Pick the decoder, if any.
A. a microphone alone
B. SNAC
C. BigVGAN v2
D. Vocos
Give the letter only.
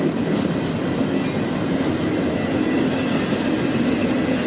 A